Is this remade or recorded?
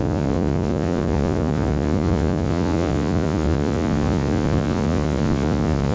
remade